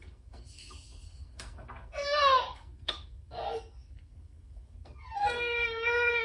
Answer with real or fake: fake